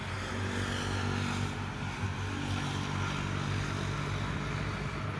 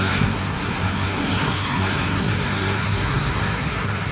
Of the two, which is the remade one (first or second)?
second